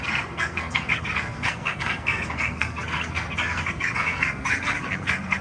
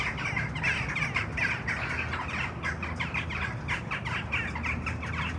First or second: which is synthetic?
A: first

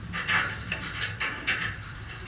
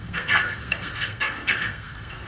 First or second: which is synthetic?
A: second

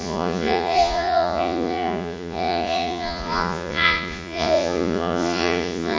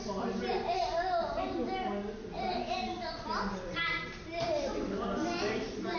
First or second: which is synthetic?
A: first